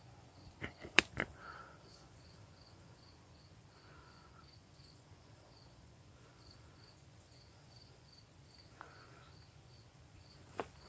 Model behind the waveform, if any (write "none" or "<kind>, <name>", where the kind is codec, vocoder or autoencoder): vocoder, Vocos